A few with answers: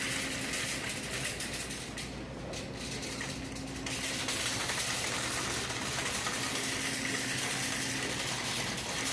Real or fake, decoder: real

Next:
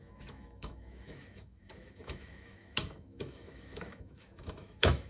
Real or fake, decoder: fake, autoencoder, DAC-VAE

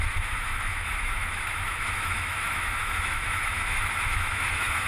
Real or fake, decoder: fake, autoencoder, DAC-VAE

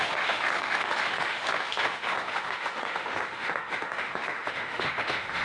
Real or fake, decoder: fake, autoencoder, DAC-VAE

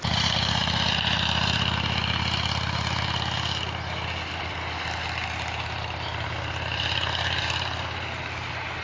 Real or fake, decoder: real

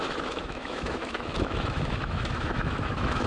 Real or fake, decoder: fake, autoencoder, DAC-VAE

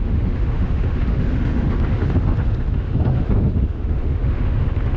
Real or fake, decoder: fake, autoencoder, DAC-VAE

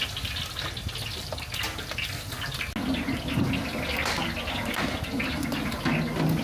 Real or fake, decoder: real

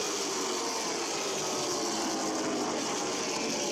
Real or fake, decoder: real